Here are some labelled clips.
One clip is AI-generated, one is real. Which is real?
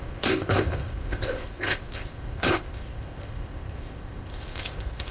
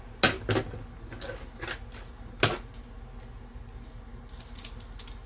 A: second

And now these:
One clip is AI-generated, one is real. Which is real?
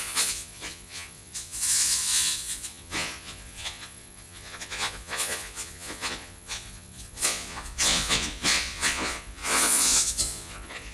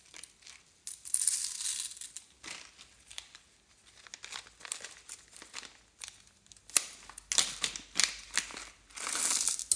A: second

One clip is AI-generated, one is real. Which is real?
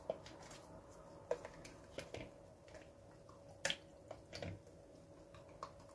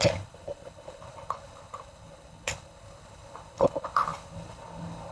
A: first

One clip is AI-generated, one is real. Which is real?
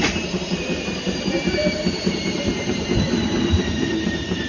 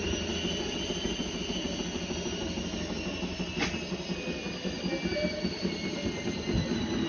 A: second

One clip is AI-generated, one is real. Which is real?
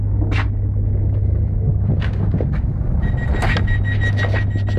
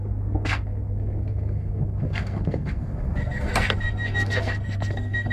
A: first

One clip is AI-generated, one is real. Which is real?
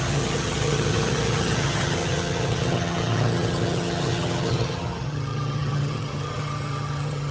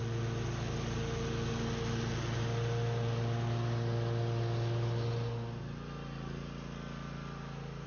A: second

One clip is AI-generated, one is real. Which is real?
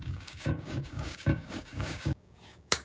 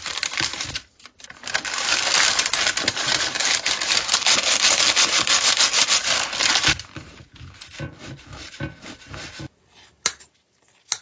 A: second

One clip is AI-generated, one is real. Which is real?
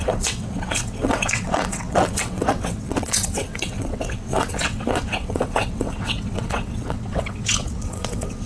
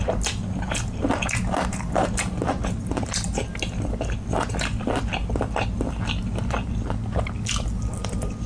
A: second